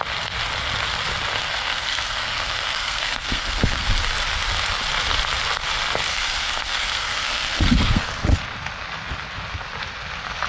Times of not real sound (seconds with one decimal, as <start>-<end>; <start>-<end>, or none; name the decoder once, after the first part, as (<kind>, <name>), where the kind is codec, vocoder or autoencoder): 1.4-3.9 (codec, SNAC); 6.1-8.0